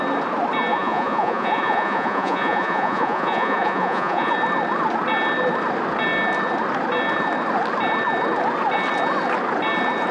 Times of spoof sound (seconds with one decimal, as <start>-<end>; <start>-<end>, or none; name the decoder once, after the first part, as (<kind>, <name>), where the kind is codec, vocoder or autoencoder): 0.7-4.3 (vocoder, Vocos)